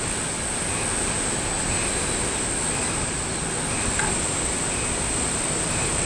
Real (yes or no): yes